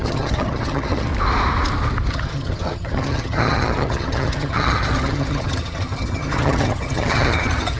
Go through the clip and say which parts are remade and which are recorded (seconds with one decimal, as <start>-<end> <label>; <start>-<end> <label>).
0.0-1.1 remade; 1.1-2.1 recorded; 2.1-7.8 remade